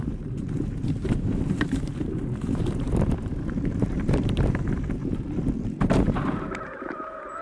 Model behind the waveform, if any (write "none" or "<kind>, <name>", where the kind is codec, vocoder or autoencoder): vocoder, BigVGAN v2